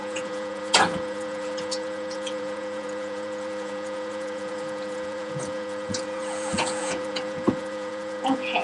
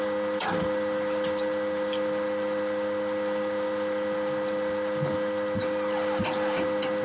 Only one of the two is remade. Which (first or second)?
first